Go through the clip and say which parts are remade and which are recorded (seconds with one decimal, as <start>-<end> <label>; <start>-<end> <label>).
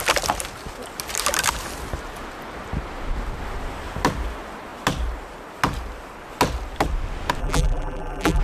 0.0-7.4 recorded; 7.4-8.4 remade